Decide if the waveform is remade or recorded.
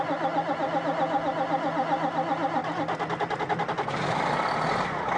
recorded